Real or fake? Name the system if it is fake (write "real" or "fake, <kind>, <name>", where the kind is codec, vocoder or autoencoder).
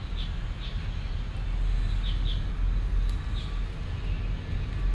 real